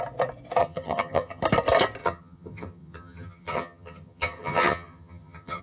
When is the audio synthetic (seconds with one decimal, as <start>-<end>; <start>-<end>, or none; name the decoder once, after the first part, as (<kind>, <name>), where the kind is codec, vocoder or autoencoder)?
0.6-1.4 (vocoder, HiFi-GAN); 2.0-5.6